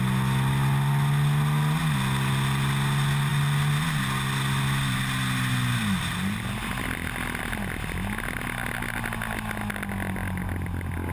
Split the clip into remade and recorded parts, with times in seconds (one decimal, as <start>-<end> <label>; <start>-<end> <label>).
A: 0.0-11.1 recorded